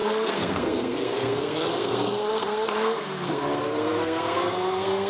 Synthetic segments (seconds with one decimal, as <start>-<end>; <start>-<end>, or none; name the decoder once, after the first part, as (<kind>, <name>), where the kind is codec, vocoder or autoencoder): 0.0-5.1 (codec, SNAC)